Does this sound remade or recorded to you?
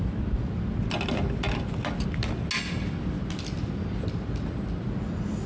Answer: recorded